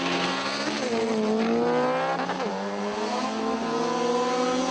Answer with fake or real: real